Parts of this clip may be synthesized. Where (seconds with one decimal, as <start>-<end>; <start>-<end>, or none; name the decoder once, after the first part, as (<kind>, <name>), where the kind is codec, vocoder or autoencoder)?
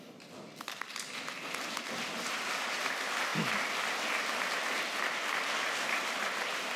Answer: none